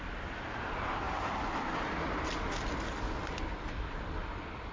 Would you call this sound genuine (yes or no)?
yes